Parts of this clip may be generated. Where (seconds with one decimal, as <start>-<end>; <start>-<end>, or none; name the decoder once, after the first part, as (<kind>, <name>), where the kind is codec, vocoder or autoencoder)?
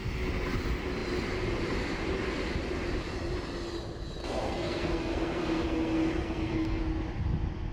4.2-6.8 (codec, SNAC)